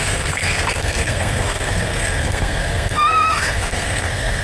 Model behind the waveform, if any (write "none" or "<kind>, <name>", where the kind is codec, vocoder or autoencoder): codec, SNAC